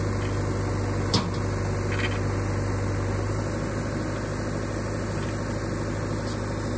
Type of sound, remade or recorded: recorded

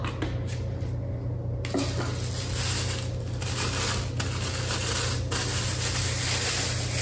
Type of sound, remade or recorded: recorded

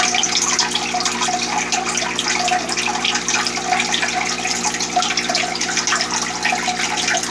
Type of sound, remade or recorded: recorded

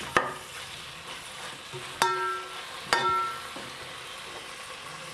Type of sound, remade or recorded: recorded